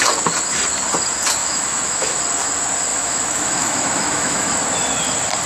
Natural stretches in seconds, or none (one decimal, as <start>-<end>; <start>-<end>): 0.0-1.4; 2.2-2.9; 4.5-5.5